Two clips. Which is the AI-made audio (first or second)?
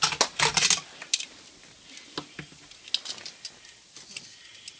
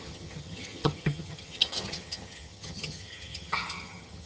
second